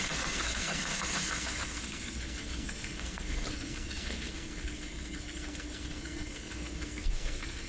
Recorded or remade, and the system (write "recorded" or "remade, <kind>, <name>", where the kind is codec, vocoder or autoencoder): remade, codec, SNAC